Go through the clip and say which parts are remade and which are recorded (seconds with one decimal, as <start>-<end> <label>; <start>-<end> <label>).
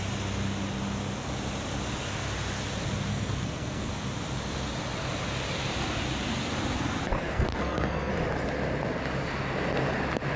0.0-3.1 recorded; 3.1-3.9 remade; 3.9-7.1 recorded; 7.1-8.1 remade; 8.1-10.4 recorded